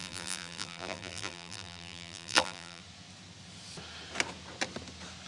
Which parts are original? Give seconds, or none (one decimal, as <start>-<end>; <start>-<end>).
2.8-5.3